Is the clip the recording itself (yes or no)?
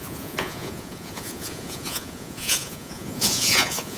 no